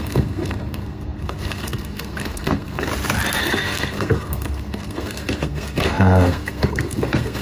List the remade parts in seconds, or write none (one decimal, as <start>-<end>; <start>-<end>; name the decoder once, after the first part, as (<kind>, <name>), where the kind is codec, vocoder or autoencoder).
0.0-2.9 (codec, SNAC); 3.4-7.4